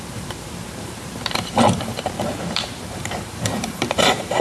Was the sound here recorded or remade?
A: remade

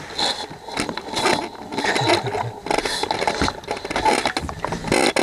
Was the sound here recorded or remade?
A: recorded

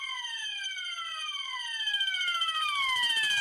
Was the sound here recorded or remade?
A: remade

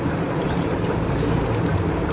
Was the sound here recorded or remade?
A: remade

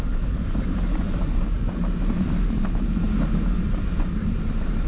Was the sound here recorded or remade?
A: remade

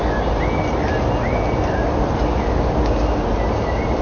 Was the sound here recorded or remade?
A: recorded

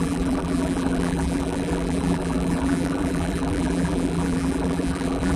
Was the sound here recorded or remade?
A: remade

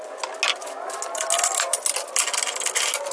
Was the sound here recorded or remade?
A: recorded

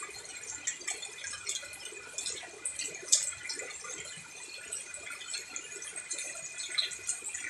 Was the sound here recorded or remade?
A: recorded